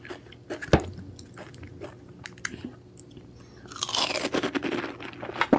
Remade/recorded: recorded